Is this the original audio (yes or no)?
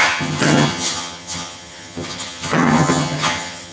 no